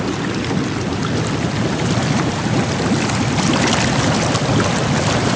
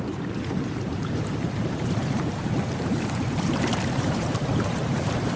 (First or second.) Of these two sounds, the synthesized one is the second